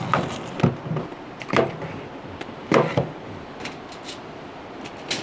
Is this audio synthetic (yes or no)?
no